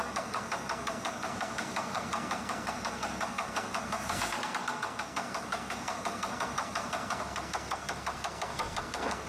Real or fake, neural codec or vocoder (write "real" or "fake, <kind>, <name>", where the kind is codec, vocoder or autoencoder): fake, codec, SNAC